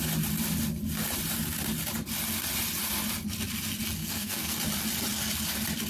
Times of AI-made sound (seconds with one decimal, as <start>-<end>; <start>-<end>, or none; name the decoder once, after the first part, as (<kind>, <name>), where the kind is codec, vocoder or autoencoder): 4.0-4.6 (codec, SNAC)